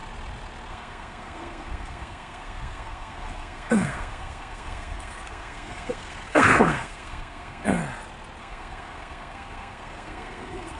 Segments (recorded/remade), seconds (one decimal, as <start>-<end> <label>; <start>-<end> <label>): 0.0-0.7 recorded; 0.7-7.8 remade; 7.8-8.4 recorded; 8.4-10.8 remade